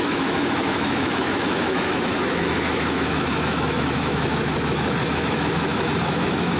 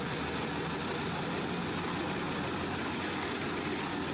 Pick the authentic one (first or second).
second